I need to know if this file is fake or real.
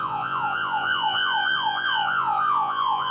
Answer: fake